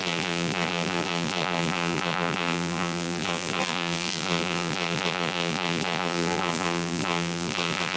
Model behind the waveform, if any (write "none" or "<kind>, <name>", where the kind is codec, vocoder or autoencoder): vocoder, BigVGAN v2